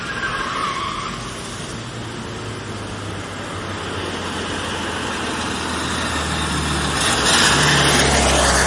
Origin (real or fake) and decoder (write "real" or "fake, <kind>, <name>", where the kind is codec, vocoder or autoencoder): real